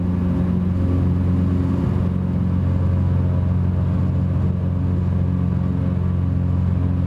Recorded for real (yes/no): yes